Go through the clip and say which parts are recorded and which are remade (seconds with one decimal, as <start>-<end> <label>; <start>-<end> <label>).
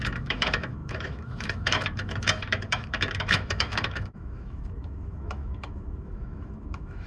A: 0.0-7.1 remade